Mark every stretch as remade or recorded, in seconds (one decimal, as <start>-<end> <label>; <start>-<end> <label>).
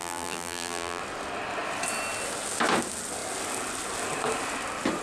0.0-1.0 remade; 1.0-5.0 recorded